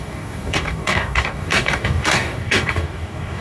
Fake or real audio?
fake